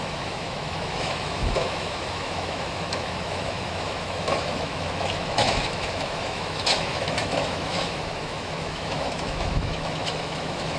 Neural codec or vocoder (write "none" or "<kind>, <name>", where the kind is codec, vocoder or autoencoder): autoencoder, DAC-VAE